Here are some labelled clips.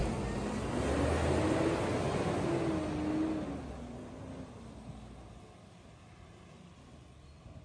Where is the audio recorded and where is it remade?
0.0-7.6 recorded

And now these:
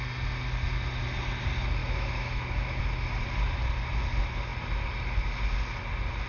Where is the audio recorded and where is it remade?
0.0-1.8 recorded; 1.8-2.8 remade; 2.8-6.3 recorded

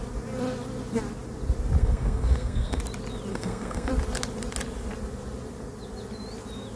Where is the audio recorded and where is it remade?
0.0-1.8 recorded; 1.8-2.8 remade; 2.8-3.3 recorded; 3.3-3.9 remade; 3.9-6.8 recorded

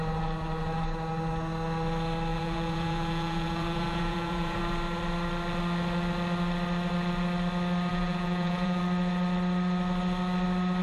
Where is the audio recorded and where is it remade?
0.0-2.3 recorded; 2.3-4.6 remade; 4.6-7.9 recorded; 7.9-8.8 remade; 8.8-10.8 recorded

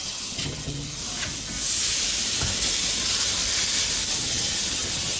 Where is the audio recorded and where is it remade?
0.0-1.0 remade; 1.0-4.1 recorded; 4.1-5.2 remade